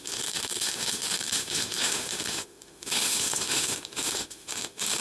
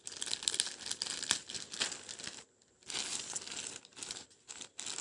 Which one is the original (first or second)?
second